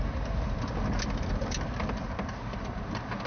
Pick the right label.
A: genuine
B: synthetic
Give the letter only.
A